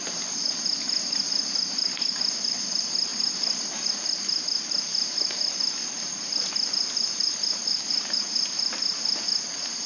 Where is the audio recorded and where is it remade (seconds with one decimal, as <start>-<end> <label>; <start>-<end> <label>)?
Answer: 0.0-9.9 recorded